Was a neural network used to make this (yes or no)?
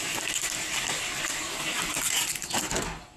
no